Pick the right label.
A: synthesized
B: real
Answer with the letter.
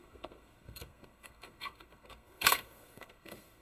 A